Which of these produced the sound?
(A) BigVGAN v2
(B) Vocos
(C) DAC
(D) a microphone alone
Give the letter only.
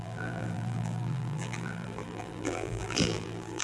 A